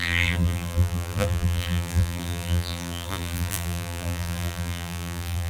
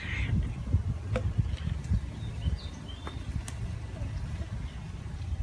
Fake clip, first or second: first